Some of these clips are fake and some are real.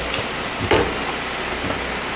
real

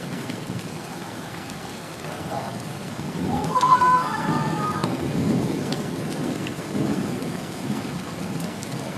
fake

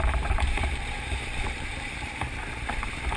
fake